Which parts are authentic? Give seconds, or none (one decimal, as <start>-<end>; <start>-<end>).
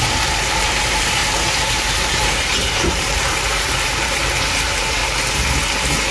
5.0-6.1